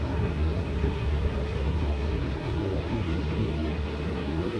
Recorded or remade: remade